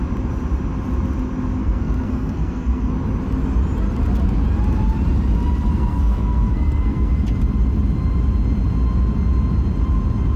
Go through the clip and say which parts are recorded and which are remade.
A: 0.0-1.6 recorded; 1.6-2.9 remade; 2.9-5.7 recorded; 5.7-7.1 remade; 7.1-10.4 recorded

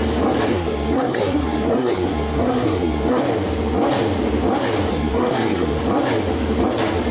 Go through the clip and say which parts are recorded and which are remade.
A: 0.0-0.5 recorded; 0.5-3.2 remade; 3.2-4.9 recorded; 4.9-5.8 remade; 5.8-7.1 recorded

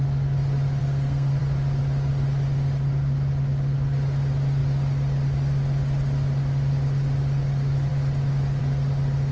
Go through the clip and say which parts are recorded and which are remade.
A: 0.0-0.8 recorded; 0.8-1.4 remade; 1.4-9.3 recorded

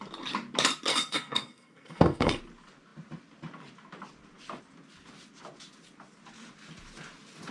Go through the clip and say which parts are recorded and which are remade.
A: 0.0-0.9 recorded; 0.9-2.4 remade; 2.4-7.5 recorded

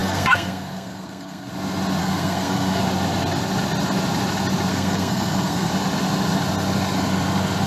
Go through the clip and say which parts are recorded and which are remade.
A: 0.0-1.5 remade; 1.5-2.0 recorded; 2.0-2.8 remade; 2.8-4.7 recorded; 4.7-5.7 remade; 5.7-7.7 recorded